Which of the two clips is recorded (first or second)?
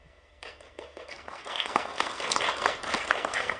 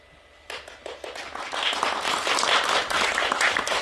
second